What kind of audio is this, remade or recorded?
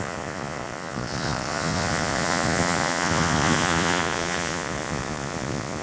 remade